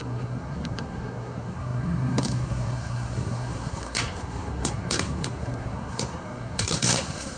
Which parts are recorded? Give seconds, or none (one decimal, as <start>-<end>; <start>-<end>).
none